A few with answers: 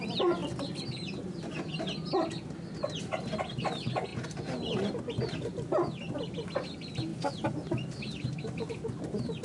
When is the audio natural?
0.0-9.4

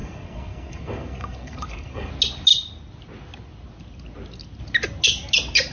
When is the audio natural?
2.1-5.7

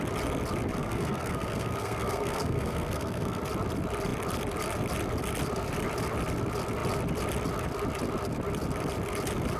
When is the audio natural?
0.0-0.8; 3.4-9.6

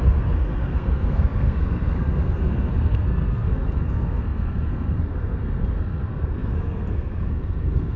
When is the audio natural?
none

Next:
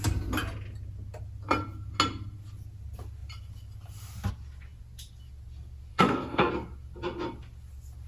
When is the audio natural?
0.0-5.9; 6.5-8.1